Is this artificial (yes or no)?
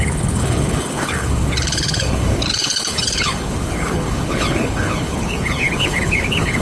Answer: yes